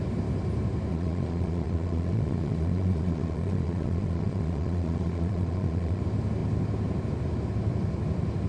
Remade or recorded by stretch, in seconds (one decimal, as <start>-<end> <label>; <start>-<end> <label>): 0.0-0.9 recorded; 0.9-6.0 remade; 6.0-8.5 recorded